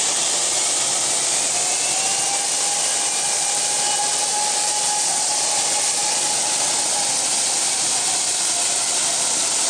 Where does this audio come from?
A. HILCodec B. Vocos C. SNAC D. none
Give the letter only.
D